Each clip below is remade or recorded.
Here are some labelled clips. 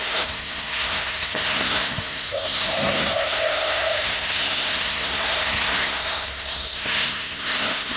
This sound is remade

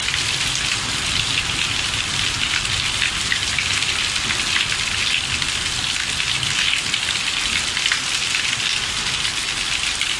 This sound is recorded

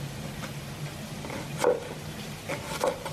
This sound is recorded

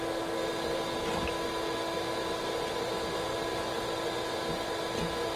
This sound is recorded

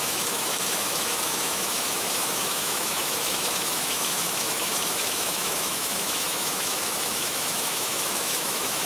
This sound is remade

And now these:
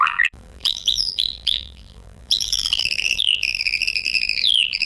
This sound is remade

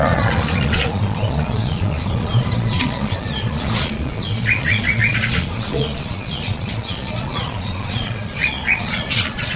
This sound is remade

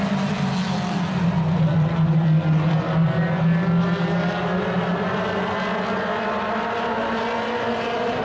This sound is recorded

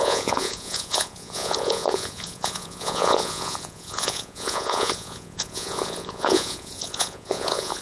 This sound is remade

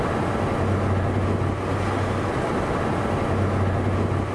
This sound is recorded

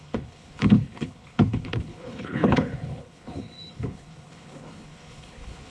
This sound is remade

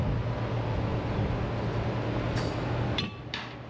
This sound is recorded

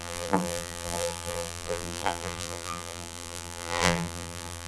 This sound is remade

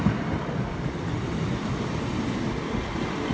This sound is recorded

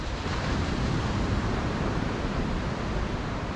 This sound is remade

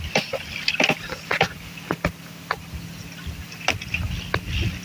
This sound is recorded